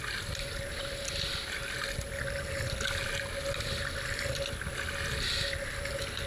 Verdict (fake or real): real